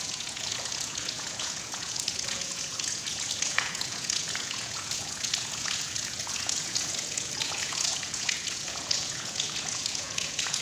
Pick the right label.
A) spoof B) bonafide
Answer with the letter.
A